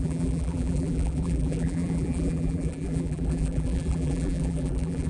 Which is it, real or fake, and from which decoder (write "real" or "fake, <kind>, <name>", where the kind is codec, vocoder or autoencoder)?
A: fake, vocoder, BigVGAN v2